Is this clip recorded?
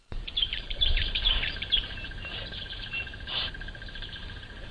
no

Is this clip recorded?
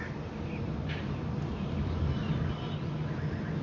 yes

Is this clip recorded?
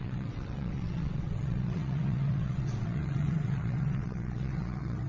no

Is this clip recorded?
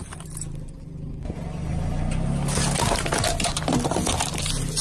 yes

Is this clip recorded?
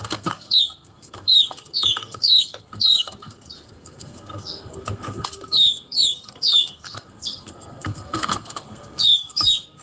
no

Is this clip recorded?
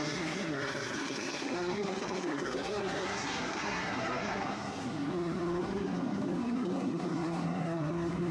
no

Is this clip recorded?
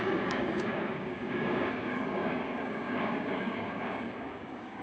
no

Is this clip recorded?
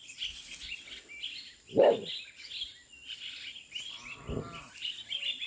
yes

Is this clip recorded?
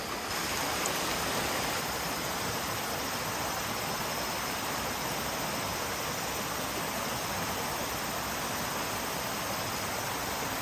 yes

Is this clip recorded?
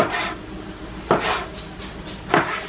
yes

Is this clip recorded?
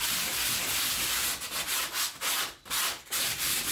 no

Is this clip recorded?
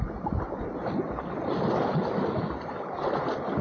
yes